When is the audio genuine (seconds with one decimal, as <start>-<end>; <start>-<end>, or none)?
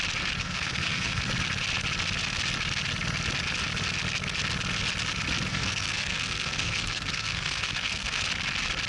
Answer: 0.0-0.4; 1.2-5.5; 8.2-8.9